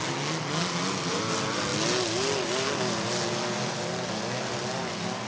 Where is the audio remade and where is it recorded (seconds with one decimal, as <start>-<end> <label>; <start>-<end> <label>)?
0.0-5.3 recorded